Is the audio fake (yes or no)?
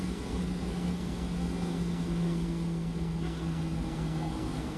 yes